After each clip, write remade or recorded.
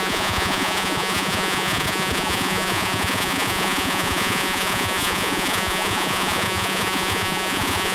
remade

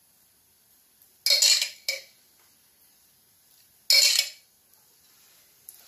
recorded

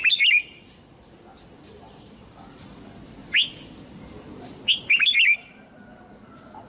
recorded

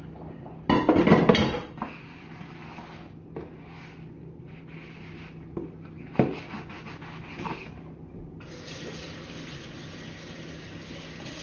recorded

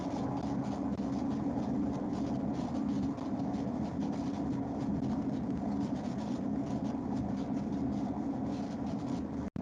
recorded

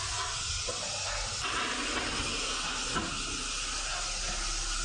recorded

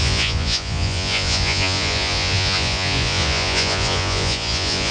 remade